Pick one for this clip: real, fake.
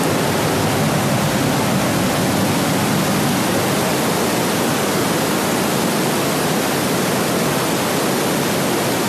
real